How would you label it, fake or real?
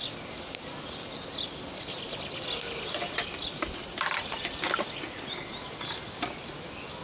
real